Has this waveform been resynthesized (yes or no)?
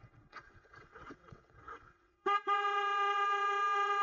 yes